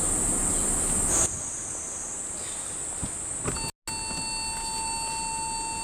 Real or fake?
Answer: real